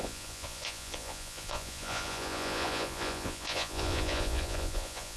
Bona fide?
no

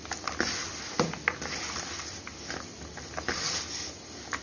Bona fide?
yes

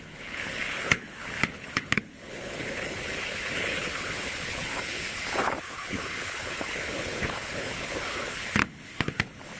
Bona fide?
no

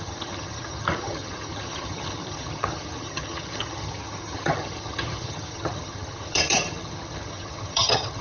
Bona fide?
no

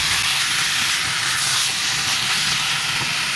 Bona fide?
yes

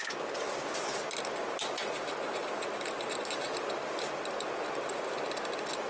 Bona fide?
yes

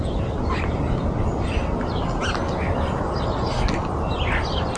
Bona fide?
yes